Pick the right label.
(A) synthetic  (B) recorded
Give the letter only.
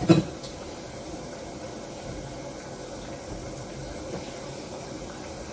B